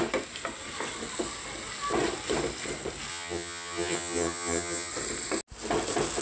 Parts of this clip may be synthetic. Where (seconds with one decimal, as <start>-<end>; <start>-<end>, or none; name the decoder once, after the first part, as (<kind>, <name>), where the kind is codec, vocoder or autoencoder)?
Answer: 3.1-4.9 (vocoder, HiFi-GAN)